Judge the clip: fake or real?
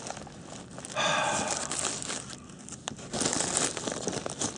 real